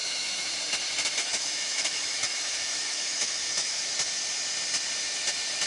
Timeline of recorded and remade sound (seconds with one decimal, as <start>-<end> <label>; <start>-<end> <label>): 0.0-0.5 remade; 0.5-1.2 recorded; 1.2-3.8 remade; 3.8-5.7 recorded